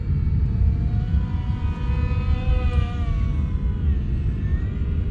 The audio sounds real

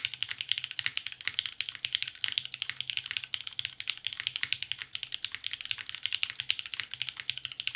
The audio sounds real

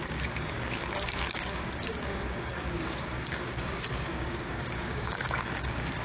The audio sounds fake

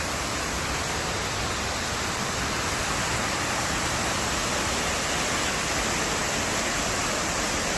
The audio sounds fake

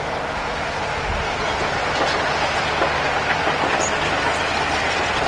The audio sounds real